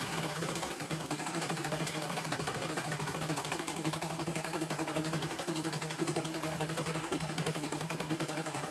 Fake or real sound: fake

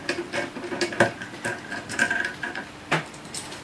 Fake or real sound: fake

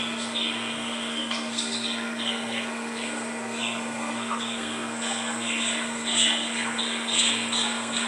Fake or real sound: fake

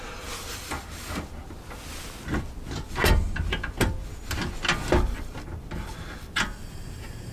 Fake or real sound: real